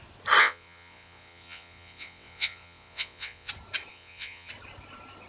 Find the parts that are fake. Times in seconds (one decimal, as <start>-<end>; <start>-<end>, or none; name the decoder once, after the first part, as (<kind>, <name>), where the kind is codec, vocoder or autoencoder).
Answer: 0.4-3.5 (vocoder, WaveNeXt); 3.9-4.5